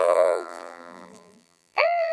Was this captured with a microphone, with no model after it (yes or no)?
no